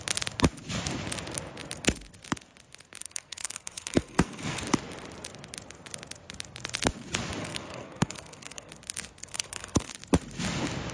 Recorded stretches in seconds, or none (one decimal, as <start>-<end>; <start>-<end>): 0.0-3.0; 4.6-7.4; 8.7-9.2; 9.9-10.9